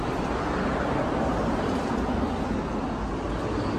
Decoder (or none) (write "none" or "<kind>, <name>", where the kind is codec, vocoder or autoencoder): none